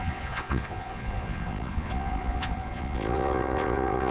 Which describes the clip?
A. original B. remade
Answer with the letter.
B